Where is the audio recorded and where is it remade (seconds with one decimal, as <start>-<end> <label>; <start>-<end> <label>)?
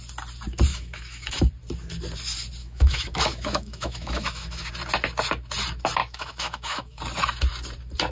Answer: 0.0-0.7 recorded; 0.7-1.4 remade; 1.4-2.6 recorded; 2.6-4.7 remade; 4.7-6.0 recorded; 6.0-7.0 remade; 7.0-8.1 recorded